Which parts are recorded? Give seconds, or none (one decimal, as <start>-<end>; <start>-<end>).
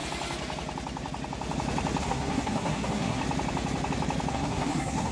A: 0.0-2.0; 3.2-4.3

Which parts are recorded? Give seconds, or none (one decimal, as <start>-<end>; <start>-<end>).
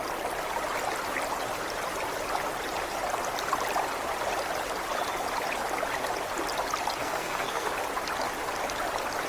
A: 0.0-7.0; 7.7-9.3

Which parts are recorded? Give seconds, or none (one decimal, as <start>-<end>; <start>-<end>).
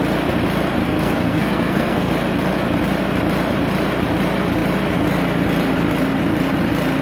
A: 0.0-0.8; 2.1-7.0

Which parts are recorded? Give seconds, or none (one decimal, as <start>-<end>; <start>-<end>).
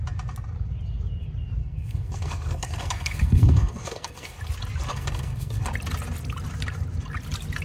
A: 0.0-1.6; 4.4-4.9; 5.7-7.6